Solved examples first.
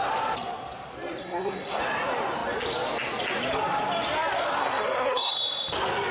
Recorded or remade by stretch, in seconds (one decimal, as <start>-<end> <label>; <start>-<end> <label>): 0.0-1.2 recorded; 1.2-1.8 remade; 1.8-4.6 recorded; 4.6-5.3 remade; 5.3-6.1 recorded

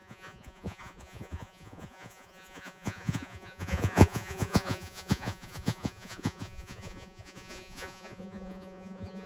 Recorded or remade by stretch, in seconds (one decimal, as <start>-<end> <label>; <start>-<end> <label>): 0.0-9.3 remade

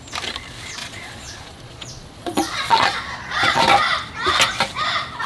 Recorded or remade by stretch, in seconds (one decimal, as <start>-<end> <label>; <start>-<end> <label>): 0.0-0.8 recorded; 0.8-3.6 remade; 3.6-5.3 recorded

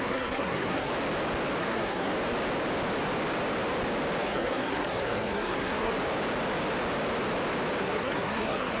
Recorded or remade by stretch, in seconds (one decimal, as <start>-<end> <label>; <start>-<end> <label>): 0.0-0.9 remade; 0.9-1.6 recorded; 1.6-2.1 remade; 2.1-4.2 recorded; 4.2-5.9 remade; 5.9-7.8 recorded; 7.8-8.8 remade

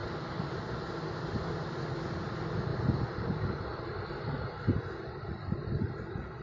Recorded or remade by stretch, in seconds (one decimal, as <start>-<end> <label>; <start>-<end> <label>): 0.0-6.4 recorded

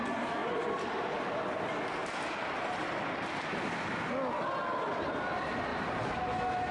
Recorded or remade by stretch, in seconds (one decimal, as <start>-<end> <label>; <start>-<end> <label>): 0.0-0.4 recorded; 0.4-1.3 remade; 1.3-2.0 recorded; 2.0-3.0 remade; 3.0-5.7 recorded; 5.7-6.2 remade; 6.2-6.7 recorded

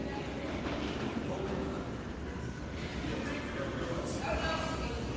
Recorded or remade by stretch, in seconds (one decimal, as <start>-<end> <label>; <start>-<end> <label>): 0.0-1.4 remade; 1.4-5.2 recorded

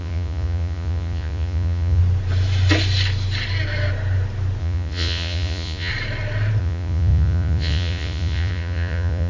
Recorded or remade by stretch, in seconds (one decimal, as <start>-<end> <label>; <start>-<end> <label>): 0.0-2.0 remade; 2.0-4.6 recorded; 4.6-5.9 remade; 5.9-6.6 recorded; 6.6-9.3 remade